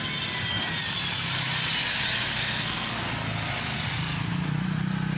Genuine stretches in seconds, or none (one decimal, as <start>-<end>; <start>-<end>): 0.0-2.3; 2.9-5.2